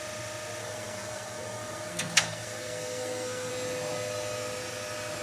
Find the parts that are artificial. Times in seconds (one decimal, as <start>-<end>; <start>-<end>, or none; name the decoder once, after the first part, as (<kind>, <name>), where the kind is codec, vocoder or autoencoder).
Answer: 0.6-3.5 (codec, SNAC)